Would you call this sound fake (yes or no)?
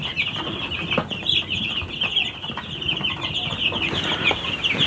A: no